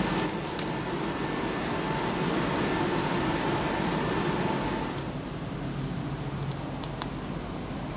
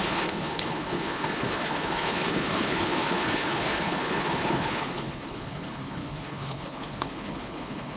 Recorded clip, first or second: first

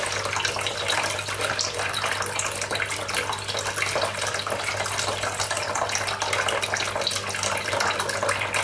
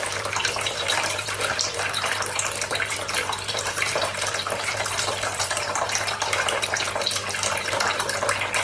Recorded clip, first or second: first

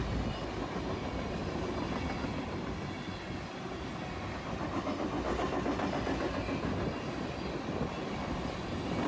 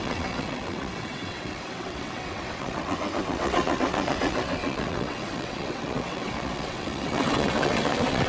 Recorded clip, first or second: first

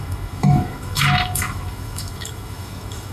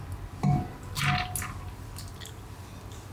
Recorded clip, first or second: second